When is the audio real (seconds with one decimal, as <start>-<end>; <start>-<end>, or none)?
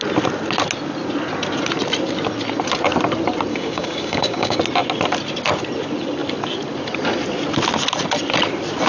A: 0.0-3.5; 4.6-8.9